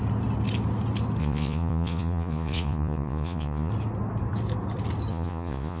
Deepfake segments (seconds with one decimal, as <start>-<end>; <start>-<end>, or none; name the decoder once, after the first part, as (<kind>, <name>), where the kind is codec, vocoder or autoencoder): 1.2-3.7 (vocoder, Vocos); 5.1-5.8